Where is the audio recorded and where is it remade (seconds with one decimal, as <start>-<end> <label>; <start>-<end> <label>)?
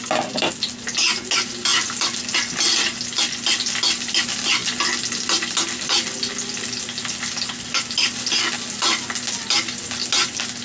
0.0-10.6 recorded